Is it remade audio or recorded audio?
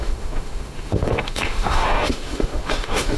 remade